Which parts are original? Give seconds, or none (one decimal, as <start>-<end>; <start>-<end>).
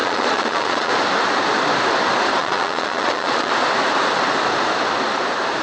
0.9-2.4; 3.5-5.6